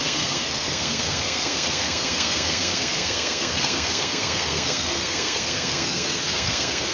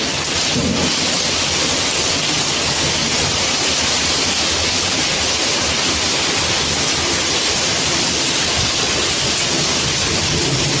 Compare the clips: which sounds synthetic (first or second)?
first